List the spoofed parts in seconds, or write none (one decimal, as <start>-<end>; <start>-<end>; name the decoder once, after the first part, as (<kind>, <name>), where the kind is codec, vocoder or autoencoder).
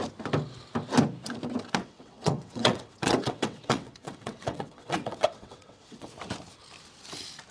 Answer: 1.8-6.1 (vocoder, WaveNeXt)